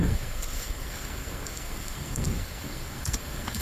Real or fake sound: fake